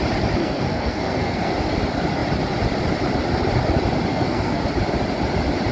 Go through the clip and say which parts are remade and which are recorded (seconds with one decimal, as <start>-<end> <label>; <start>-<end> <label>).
0.0-0.4 recorded; 0.4-1.5 remade; 1.5-4.1 recorded; 4.1-4.6 remade; 4.6-5.7 recorded